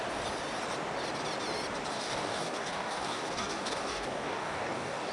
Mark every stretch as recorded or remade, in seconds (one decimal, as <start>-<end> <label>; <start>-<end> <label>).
0.0-1.9 recorded; 1.9-5.1 remade